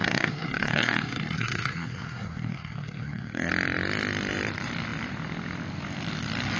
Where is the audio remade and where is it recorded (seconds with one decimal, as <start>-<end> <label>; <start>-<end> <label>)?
0.0-3.5 remade; 3.5-6.6 recorded